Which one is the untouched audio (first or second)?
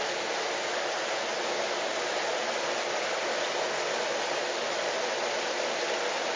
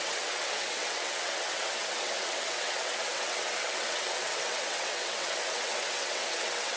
first